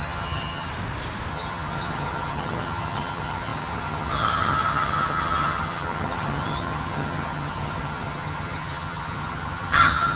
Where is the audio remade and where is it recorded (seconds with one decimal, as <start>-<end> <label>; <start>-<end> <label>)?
0.0-0.7 remade; 0.7-1.3 recorded; 1.3-10.2 remade